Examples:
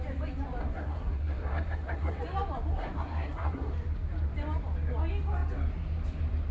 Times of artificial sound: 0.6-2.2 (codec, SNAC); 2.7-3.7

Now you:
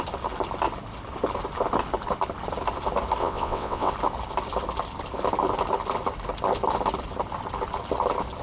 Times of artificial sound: 3.2-3.9 (vocoder, WaveNeXt)

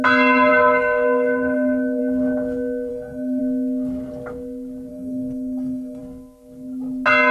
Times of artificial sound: 0.5-2.0 (codec, DAC); 2.9-3.4; 4.9-6.0

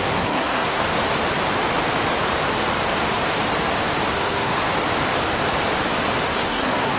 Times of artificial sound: 0.0-0.8 (codec, SNAC); 4.1-4.7; 6.3-7.0

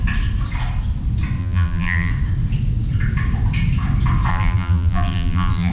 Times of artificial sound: 1.4-2.1 (vocoder, BigVGAN v2); 4.3-5.7

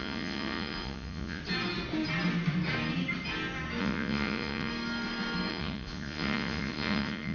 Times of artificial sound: 0.0-1.4 (vocoder, Vocos); 3.8-4.7; 5.5-7.3

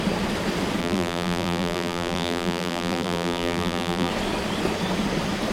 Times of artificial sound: 0.8-4.1 (vocoder, BigVGAN v2)